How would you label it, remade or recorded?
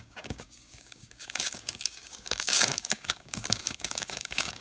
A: remade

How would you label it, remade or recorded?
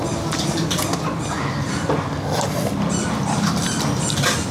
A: recorded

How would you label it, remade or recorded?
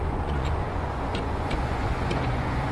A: remade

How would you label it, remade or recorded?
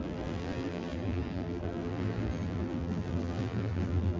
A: remade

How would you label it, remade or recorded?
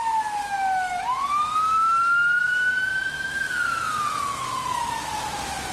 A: remade